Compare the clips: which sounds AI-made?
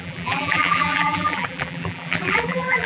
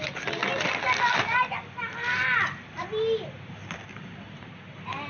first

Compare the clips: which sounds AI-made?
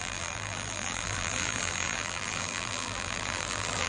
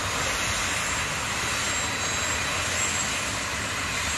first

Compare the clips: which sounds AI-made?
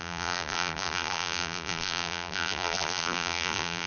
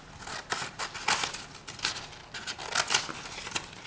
first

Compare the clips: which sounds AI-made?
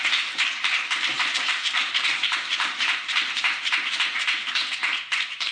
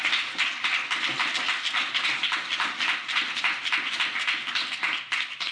first